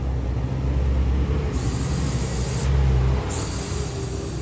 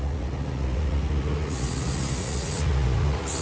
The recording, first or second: first